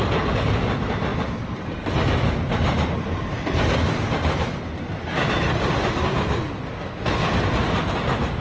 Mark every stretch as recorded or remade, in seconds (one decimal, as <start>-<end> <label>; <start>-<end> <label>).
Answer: 0.0-8.4 recorded